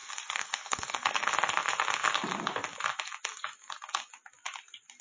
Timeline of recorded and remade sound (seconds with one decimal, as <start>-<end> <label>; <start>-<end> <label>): 0.0-1.3 remade; 1.3-5.0 recorded